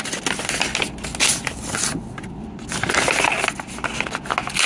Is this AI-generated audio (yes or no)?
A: no